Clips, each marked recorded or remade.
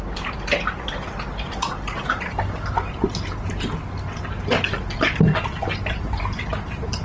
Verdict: recorded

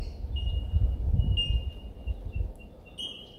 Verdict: recorded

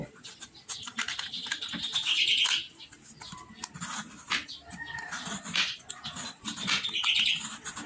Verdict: recorded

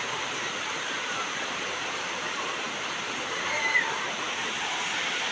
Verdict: remade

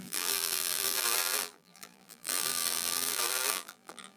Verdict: remade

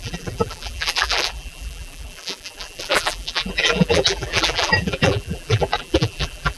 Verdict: remade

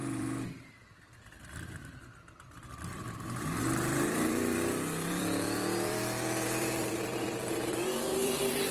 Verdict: remade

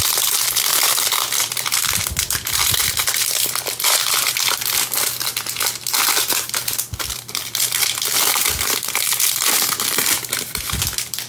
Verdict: remade